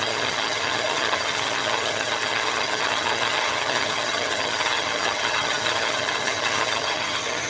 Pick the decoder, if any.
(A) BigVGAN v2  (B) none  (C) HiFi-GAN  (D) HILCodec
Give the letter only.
C